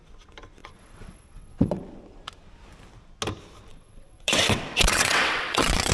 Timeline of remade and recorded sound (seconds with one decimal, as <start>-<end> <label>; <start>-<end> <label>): 0.0-0.6 recorded; 0.6-1.8 remade; 1.8-3.7 recorded; 3.7-5.9 remade